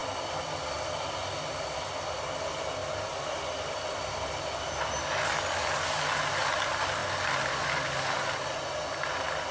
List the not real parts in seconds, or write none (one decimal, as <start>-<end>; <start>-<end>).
none